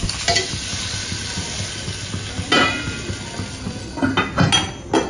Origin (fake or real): real